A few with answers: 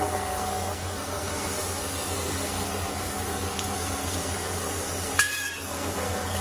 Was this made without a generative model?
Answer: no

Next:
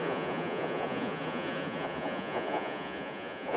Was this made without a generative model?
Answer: no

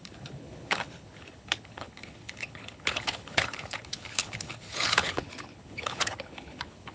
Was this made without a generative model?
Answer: no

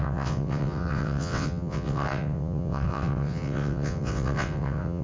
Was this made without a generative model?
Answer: no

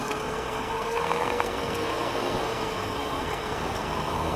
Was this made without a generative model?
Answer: no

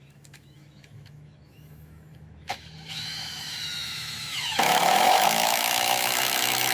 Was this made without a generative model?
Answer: no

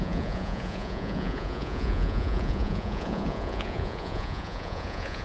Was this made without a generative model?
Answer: no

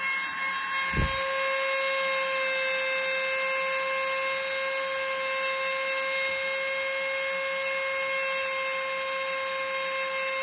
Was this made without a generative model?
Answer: yes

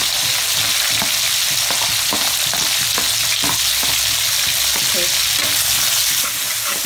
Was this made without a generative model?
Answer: yes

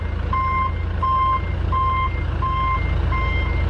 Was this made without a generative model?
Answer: yes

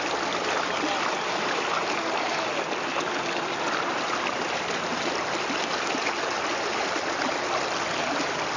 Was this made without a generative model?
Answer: yes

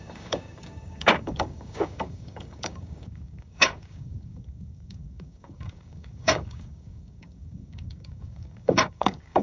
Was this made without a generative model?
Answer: no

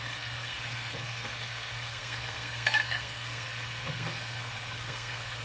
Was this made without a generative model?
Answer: no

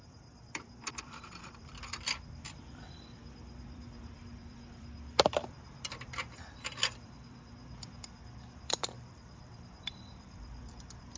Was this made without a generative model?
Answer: no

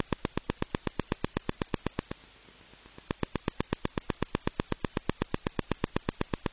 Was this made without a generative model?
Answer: yes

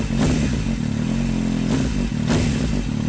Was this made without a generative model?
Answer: yes